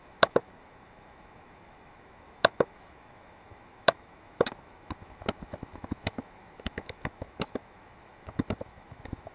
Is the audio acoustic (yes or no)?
no